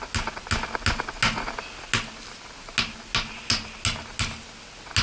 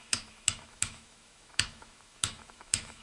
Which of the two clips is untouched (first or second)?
first